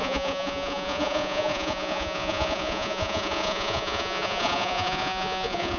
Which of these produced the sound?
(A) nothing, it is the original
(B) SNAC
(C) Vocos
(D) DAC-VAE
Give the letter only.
C